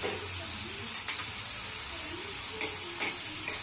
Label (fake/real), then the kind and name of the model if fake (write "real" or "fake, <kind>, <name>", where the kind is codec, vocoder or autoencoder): real